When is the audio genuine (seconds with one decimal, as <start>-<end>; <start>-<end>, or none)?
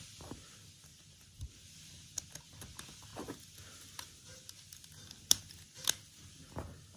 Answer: 0.0-7.0